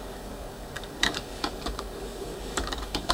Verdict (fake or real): fake